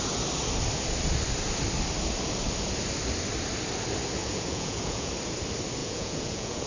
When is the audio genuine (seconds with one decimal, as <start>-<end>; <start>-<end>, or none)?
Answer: 0.0-4.2; 5.1-5.8